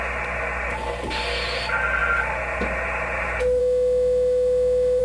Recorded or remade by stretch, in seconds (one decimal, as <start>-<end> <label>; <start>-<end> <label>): 0.0-3.6 recorded; 3.6-5.0 remade